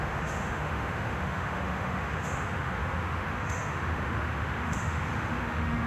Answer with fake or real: fake